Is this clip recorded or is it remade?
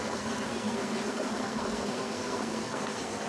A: remade